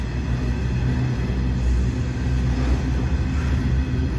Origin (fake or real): real